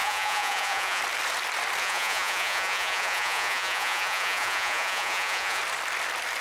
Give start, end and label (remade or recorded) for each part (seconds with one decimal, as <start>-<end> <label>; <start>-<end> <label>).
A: 0.0-1.0 remade; 1.0-1.8 recorded; 1.8-5.6 remade; 5.6-6.4 recorded